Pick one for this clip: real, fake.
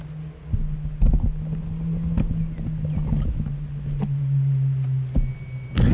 real